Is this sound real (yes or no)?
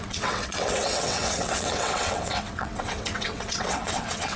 no